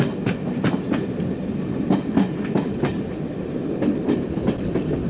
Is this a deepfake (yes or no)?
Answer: no